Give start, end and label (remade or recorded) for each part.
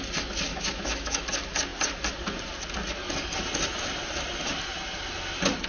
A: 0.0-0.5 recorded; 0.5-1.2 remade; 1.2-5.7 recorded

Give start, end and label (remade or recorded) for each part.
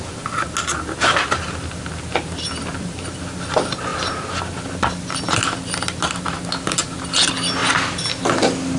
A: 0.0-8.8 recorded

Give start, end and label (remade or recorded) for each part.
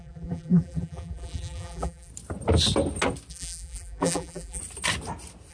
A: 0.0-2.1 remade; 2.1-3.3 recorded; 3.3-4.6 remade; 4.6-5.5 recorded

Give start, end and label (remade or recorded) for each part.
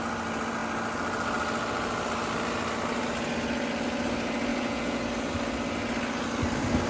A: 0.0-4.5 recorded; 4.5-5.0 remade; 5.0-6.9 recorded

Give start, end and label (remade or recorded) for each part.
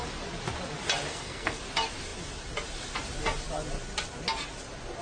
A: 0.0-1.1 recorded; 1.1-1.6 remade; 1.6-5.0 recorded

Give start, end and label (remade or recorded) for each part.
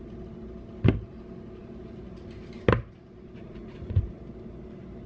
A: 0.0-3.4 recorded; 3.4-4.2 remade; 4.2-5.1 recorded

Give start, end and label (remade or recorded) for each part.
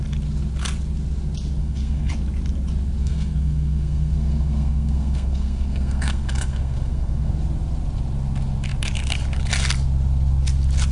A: 0.0-1.6 recorded; 1.6-2.1 remade; 2.1-3.0 recorded; 3.0-7.3 remade; 7.3-10.9 recorded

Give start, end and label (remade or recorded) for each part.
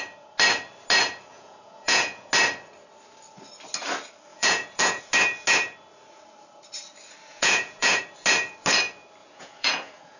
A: 0.0-1.3 recorded; 1.3-2.3 remade; 2.3-4.3 recorded; 4.3-5.0 remade; 5.0-7.3 recorded; 7.3-8.0 remade; 8.0-9.2 recorded; 9.2-10.2 remade